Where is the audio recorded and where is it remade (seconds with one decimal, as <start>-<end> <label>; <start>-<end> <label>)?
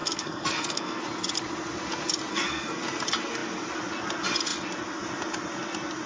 0.0-1.0 remade; 1.0-2.3 recorded; 2.3-2.8 remade; 2.8-6.1 recorded